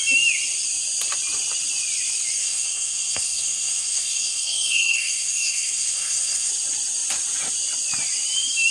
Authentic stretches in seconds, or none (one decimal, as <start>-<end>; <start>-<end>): 0.0-2.4; 6.5-8.7